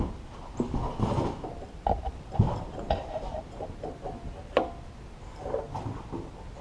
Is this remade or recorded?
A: recorded